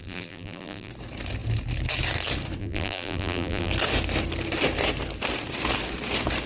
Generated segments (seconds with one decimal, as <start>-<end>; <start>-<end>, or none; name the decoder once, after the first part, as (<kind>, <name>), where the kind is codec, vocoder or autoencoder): 0.0-0.9 (vocoder, BigVGAN v2); 2.6-3.7